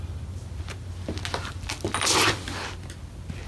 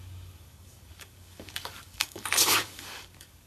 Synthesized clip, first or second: second